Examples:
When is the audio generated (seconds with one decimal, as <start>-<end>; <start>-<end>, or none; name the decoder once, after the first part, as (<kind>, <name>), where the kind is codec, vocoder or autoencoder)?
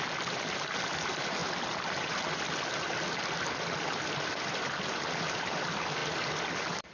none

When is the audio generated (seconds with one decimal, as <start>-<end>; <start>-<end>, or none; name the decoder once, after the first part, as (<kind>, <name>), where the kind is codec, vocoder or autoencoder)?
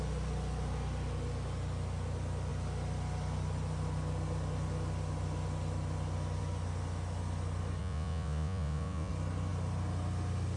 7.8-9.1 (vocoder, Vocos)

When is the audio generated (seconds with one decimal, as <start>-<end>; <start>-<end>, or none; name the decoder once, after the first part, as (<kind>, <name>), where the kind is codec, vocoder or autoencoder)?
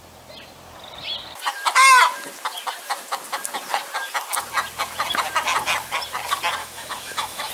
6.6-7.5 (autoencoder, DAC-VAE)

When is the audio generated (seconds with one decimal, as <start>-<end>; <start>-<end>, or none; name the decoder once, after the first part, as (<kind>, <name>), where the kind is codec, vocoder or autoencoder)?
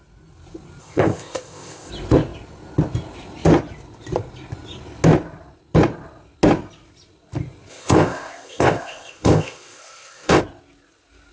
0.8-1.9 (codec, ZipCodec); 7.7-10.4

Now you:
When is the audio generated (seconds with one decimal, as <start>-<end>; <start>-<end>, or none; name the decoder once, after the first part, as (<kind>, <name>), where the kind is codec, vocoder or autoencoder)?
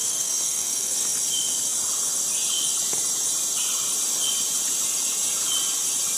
0.0-1.1 (codec, SNAC)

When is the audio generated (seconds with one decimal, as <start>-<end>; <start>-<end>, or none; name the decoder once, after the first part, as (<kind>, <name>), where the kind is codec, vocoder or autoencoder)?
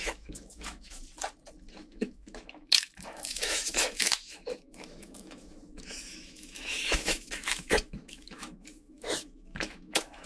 0.0-1.0 (autoencoder, DAC-VAE); 1.8-10.3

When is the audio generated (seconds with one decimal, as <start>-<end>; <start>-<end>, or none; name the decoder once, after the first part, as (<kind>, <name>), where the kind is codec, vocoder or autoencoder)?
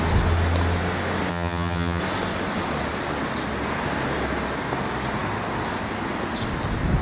1.3-2.0 (vocoder, HiFi-GAN)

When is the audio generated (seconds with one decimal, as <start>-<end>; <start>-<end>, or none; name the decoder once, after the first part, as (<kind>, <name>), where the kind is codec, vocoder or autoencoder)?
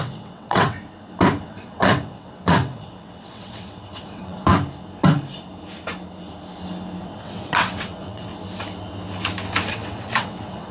0.0-0.8 (vocoder, WaveNeXt); 1.4-4.5; 7.0-8.3; 9.7-10.7